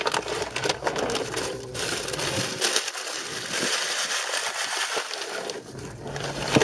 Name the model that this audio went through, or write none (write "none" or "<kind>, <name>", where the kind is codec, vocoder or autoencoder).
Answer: none